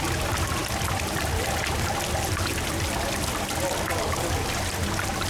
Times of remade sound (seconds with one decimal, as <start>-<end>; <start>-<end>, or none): none